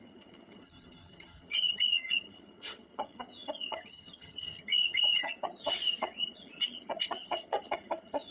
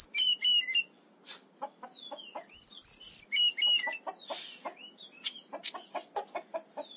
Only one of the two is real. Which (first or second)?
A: second